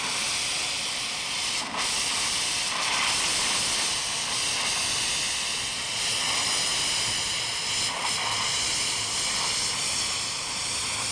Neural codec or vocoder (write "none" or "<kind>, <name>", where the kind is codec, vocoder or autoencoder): none